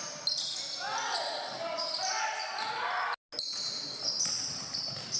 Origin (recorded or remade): recorded